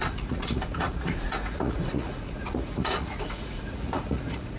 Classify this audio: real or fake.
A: fake